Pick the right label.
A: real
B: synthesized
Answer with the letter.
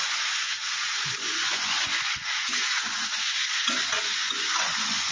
B